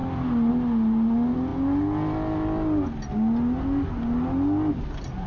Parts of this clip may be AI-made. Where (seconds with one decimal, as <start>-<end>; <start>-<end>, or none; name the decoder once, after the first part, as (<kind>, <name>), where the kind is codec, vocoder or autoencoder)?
none